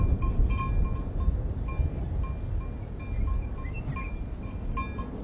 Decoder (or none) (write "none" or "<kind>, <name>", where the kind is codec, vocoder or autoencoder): none